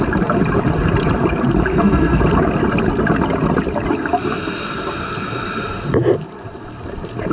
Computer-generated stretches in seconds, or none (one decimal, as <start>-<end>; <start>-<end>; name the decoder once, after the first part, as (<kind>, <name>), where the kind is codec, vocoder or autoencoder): 1.7-2.2 (codec, SNAC)